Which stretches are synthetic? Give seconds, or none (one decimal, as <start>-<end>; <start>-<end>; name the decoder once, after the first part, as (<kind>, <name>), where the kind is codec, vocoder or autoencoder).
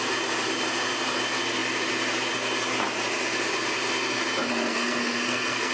4.5-5.7 (codec, SNAC)